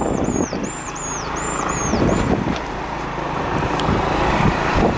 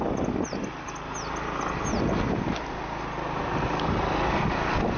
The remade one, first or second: first